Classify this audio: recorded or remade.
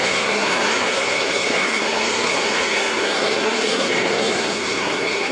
remade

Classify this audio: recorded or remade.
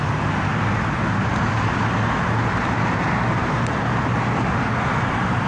recorded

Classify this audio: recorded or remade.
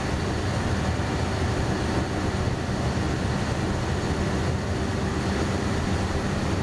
recorded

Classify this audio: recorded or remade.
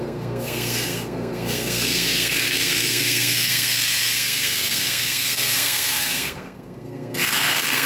remade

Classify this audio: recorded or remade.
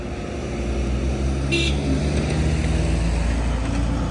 recorded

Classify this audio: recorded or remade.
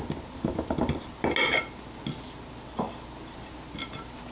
recorded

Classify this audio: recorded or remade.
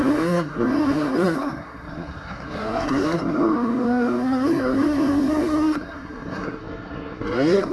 remade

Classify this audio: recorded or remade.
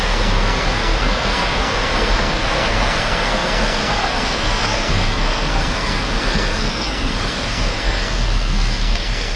remade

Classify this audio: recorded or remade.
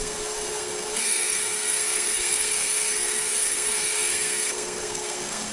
remade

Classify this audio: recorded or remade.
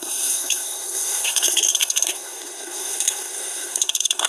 remade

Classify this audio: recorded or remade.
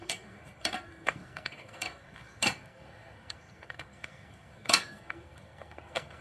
remade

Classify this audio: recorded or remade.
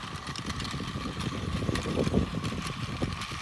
recorded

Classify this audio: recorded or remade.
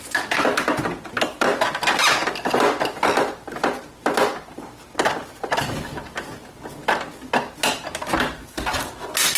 recorded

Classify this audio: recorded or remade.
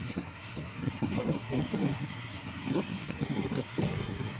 remade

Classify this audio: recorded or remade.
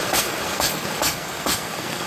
remade